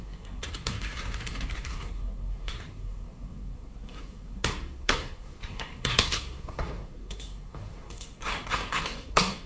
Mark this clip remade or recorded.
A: remade